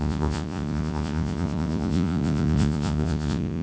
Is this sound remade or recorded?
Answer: remade